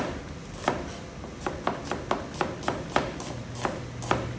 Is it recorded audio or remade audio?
recorded